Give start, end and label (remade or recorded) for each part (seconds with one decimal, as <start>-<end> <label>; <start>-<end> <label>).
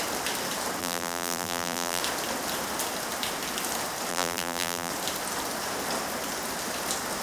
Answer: 0.0-0.8 recorded; 0.8-2.0 remade; 2.0-4.1 recorded; 4.1-4.9 remade; 4.9-7.2 recorded